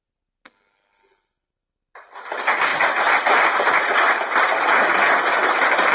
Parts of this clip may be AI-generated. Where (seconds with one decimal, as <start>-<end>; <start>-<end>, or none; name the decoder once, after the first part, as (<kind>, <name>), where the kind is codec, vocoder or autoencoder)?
2.7-5.3 (vocoder, BigVGAN v2)